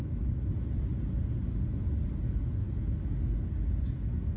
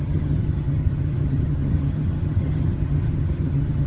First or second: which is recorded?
first